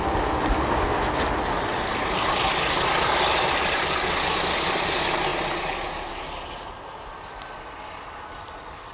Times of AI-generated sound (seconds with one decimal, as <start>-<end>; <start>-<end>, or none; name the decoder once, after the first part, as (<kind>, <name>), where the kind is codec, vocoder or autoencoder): none